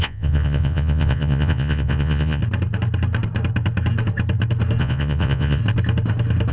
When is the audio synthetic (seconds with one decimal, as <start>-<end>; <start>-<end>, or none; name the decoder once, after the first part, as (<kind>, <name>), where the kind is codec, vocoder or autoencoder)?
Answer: 0.0-2.4 (vocoder, Vocos); 4.8-5.6